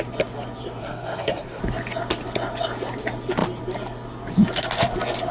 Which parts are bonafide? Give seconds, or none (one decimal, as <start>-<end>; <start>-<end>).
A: 0.0-0.8; 1.6-5.3